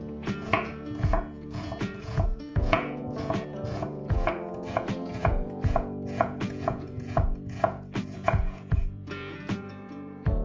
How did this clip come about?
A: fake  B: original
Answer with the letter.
A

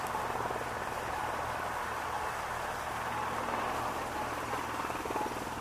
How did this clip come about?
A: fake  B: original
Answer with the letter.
B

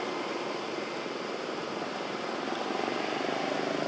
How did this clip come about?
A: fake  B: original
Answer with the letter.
B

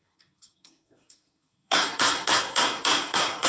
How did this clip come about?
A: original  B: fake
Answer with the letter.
B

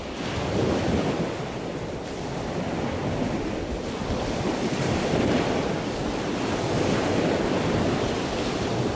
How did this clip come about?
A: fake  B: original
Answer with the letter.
B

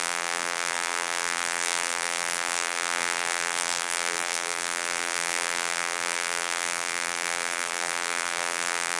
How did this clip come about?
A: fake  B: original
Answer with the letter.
A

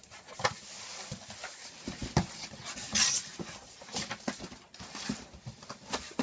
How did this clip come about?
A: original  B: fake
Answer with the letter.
A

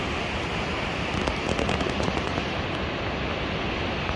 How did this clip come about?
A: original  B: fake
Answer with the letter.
A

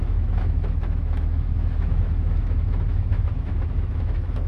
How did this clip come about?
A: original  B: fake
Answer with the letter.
B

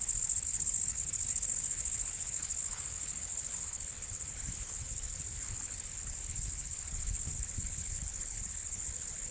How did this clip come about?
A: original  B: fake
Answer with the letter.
B